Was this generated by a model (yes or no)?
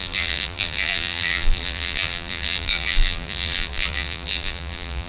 yes